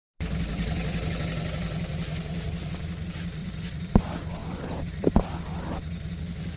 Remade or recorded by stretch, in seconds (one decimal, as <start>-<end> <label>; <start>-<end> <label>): 0.0-3.4 recorded; 3.4-4.0 remade; 4.0-4.4 recorded; 4.4-5.4 remade; 5.4-6.6 recorded